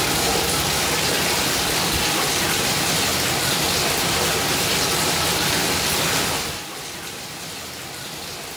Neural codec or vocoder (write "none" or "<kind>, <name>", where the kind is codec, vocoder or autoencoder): none